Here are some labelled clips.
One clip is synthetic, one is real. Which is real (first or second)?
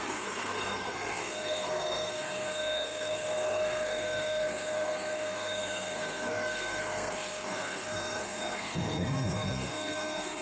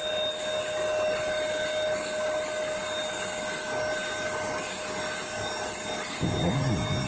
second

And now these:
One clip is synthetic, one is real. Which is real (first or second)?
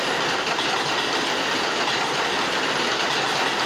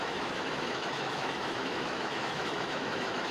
first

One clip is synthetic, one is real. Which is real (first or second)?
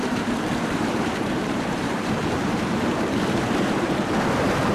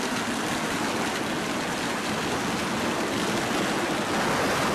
second